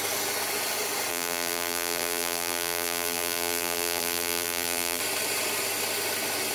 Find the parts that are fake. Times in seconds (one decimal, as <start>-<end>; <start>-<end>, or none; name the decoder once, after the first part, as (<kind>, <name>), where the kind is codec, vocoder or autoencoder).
1.1-5.0 (vocoder, BigVGAN v2)